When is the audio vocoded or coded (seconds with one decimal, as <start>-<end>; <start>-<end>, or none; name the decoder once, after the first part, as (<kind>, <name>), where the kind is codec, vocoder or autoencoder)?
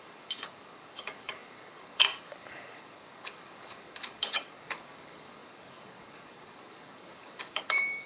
0.0-8.1 (codec, DAC)